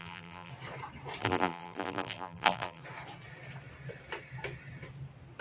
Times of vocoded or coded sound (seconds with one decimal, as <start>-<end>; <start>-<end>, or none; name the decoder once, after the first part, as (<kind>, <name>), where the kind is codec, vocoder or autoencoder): 0.0-0.5 (vocoder, BigVGAN v2); 1.2-2.8

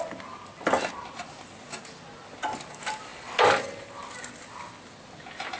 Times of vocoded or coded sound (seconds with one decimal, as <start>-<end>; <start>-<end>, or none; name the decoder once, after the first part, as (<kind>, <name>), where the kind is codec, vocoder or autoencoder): none

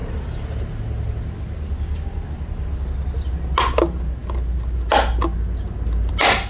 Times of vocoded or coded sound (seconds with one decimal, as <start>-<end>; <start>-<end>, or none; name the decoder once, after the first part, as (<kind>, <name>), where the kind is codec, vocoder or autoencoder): none

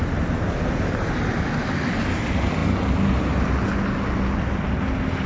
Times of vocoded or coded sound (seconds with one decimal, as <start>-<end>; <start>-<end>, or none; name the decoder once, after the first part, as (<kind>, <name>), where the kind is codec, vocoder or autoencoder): none

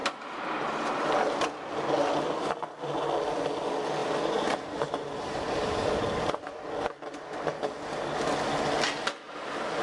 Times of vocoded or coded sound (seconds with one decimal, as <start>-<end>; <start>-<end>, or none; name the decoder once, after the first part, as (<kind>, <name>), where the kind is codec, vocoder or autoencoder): 4.0-5.8 (vocoder, BigVGAN v2)

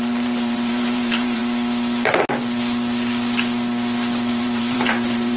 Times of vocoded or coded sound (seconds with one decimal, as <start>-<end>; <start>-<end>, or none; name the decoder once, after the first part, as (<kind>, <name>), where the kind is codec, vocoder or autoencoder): 0.0-1.4 (vocoder, BigVGAN v2); 4.3-5.4

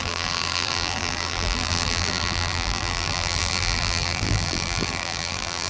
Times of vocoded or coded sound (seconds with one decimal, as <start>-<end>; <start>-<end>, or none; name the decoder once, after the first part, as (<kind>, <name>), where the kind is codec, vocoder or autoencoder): 0.0-5.7 (vocoder, BigVGAN v2)